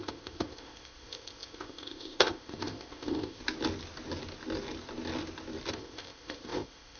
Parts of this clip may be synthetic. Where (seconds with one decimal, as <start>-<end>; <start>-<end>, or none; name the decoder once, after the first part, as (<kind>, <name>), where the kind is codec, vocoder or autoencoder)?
0.0-3.4 (codec, ZipCodec); 5.7-7.0